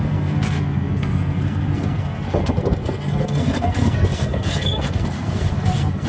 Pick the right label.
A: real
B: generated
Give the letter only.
B